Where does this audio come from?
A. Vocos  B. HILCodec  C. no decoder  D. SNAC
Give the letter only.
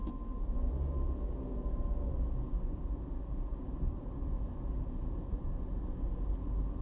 C